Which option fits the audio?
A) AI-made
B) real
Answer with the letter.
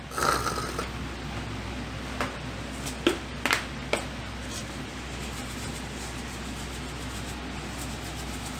B